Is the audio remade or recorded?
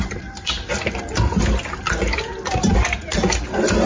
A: recorded